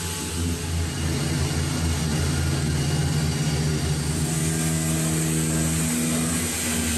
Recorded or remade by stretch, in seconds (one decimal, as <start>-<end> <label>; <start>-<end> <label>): 0.0-7.0 recorded